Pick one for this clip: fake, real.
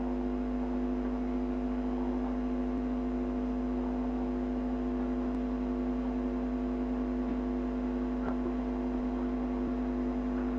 real